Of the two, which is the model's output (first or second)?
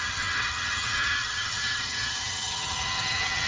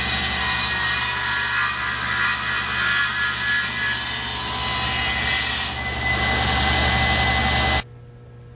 first